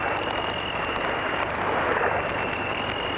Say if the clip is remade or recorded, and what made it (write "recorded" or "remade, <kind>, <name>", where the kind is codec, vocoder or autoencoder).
recorded